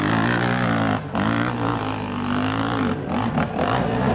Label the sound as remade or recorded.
recorded